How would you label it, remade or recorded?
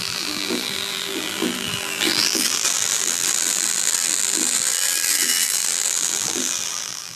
remade